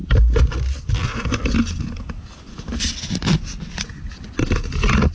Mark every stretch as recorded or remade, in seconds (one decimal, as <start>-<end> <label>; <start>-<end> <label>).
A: 0.0-5.1 recorded